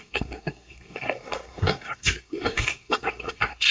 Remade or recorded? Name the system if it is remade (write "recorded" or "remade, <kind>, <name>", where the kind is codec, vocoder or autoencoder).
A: remade, codec, SNAC